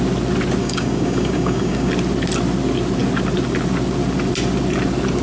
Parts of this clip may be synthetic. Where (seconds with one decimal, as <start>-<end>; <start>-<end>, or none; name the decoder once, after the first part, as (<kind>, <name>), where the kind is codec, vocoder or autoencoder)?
0.6-1.9 (codec, DAC)